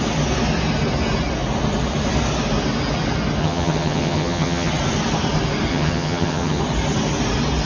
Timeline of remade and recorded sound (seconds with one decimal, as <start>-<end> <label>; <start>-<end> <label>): 0.0-3.4 recorded; 3.4-4.7 remade; 4.7-5.7 recorded; 5.7-6.6 remade; 6.6-7.7 recorded